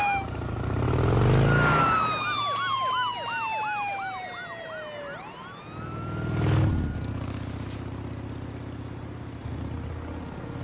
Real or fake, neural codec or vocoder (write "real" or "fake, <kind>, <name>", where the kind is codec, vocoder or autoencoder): real